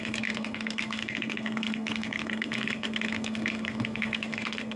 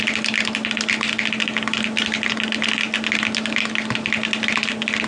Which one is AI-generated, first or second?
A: first